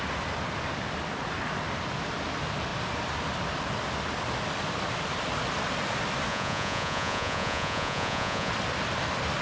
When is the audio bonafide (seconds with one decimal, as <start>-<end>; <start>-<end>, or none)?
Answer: 0.0-6.3; 8.5-9.4